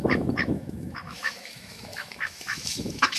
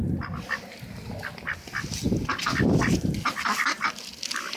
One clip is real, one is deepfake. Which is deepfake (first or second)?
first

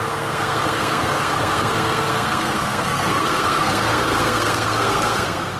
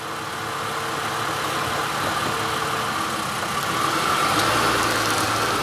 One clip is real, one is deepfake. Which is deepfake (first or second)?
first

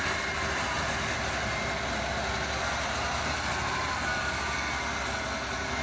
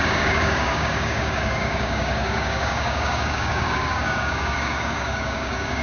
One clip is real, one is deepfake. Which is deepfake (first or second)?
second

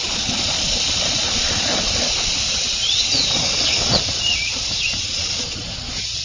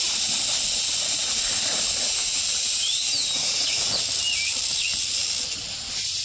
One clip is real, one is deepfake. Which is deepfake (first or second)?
first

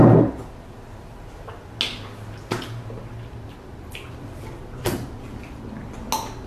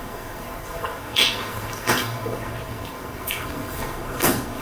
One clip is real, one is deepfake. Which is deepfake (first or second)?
second